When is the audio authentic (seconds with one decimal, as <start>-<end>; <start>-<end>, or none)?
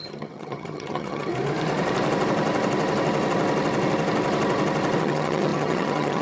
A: 1.3-5.0